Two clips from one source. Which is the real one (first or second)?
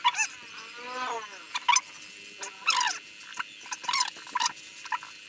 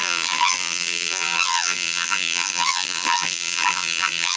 first